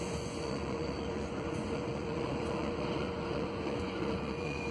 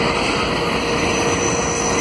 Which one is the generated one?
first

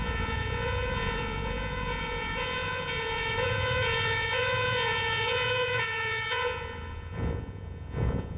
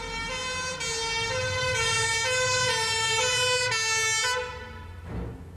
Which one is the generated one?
first